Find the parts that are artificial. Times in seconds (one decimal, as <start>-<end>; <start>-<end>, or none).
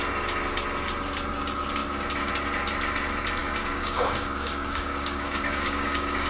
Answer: 3.4-6.3